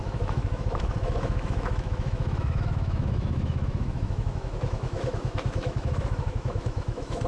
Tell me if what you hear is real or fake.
fake